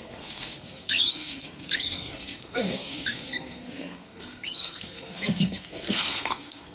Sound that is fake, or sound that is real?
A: fake